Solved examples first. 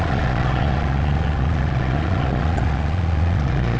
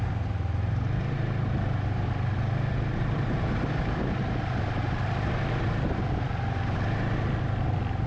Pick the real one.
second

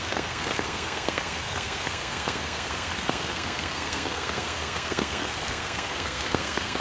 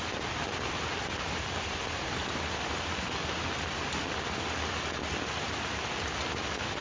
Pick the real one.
second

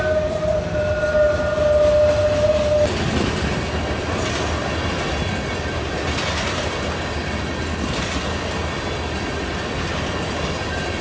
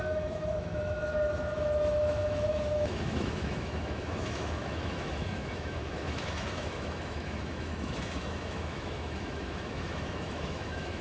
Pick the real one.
first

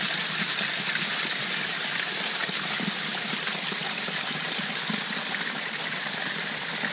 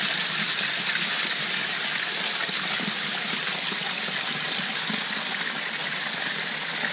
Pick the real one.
second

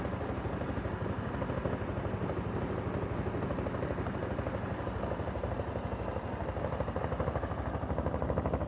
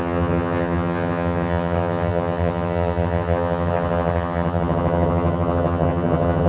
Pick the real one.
first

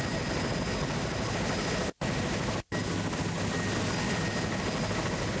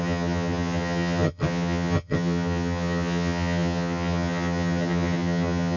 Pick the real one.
first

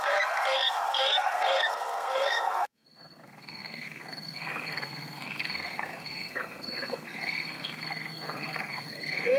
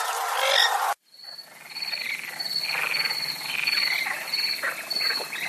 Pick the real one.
second